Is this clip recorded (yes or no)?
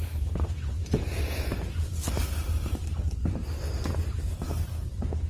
no